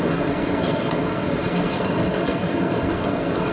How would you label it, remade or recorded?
remade